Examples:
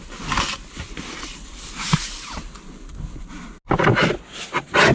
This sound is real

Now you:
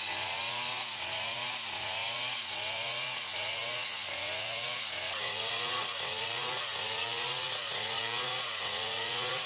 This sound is fake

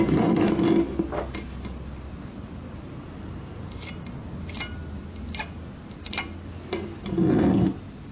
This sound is real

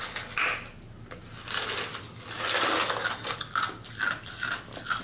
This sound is real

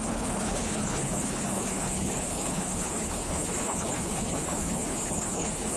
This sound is fake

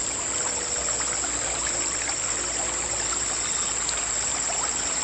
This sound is real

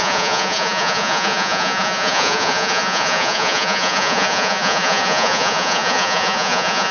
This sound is fake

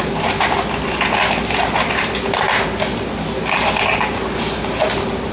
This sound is real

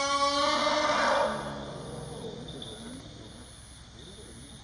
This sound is real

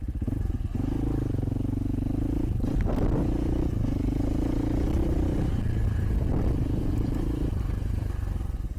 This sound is real